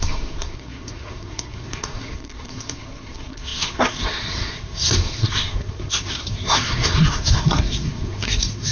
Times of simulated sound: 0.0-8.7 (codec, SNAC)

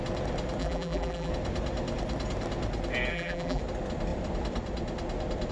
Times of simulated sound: 0.6-1.3 (vocoder, BigVGAN v2); 3.1-3.6

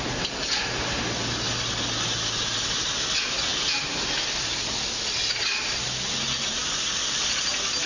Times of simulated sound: none

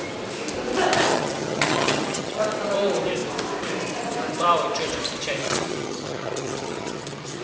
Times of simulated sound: 1.1-2.4 (vocoder, HiFi-GAN); 5.4-7.4

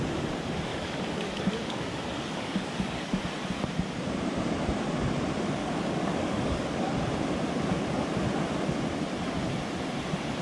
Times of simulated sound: 0.7-3.2 (codec, DAC); 5.6-7.1

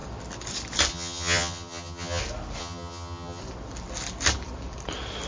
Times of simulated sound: 0.9-2.2 (vocoder, HiFi-GAN); 2.6-3.4

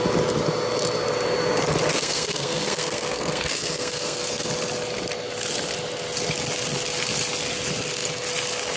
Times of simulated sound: 1.9-4.5 (codec, SNAC)

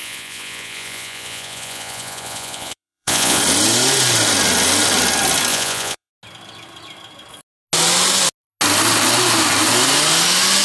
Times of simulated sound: 0.0-3.4 (vocoder, Vocos); 5.5-6.1